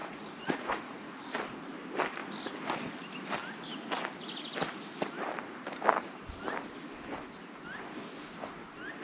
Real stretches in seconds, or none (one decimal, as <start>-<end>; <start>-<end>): 1.4-9.0